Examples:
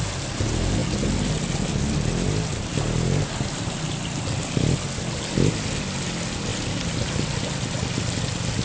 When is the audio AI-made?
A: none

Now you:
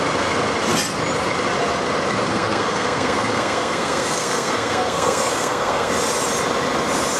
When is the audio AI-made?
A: 2.3-5.9 (codec, SNAC)

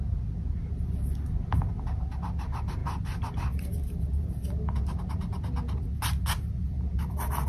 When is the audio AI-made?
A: none

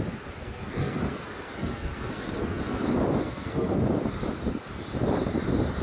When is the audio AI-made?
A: 0.4-2.8 (codec, SNAC); 3.2-3.8

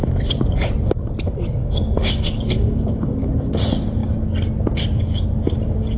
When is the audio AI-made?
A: 1.6-3.3 (codec, DAC)

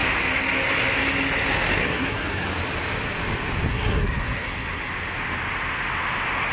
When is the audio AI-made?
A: 1.8-2.5 (codec, SNAC); 3.7-4.9

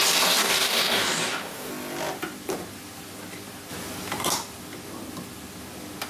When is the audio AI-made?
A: 0.4-1.7 (codec, DAC)

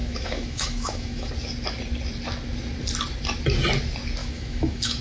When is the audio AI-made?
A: 0.0-1.3 (autoencoder, DAC-VAE); 4.2-5.0